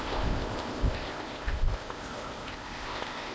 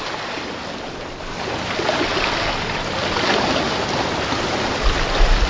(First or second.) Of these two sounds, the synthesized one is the first